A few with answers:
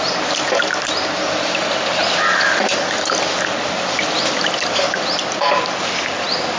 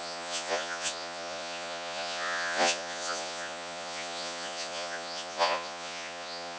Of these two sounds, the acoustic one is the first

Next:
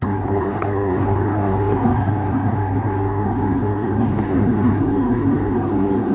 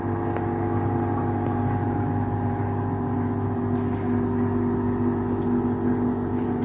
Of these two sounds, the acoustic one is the second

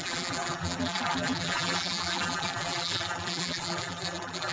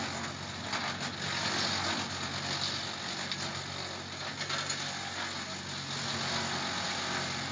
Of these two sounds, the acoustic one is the second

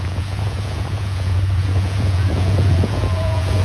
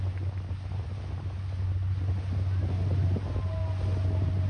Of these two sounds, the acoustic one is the second